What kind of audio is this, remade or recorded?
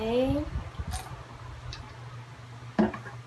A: recorded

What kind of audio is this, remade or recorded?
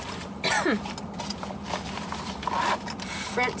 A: recorded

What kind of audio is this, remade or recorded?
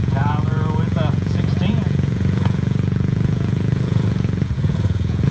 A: remade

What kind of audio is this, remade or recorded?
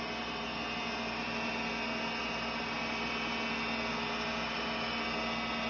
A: recorded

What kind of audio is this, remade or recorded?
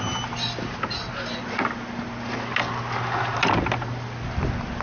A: recorded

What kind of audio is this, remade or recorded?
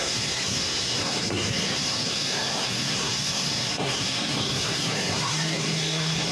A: remade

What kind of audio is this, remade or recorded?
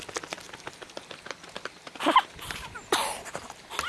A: recorded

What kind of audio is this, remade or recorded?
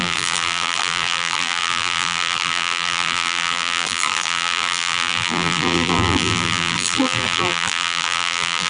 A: remade